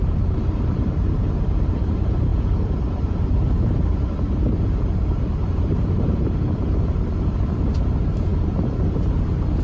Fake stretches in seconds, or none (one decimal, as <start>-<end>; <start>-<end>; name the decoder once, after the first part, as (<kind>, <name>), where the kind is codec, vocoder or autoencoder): 0.0-9.6 (vocoder, BigVGAN v2)